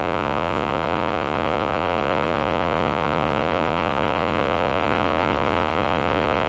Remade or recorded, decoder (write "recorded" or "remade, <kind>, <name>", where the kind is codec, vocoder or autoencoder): remade, vocoder, Vocos